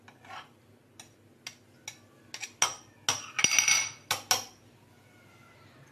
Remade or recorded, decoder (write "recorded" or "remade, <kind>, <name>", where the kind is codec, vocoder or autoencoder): recorded